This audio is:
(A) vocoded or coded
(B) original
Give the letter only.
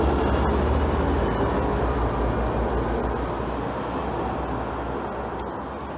B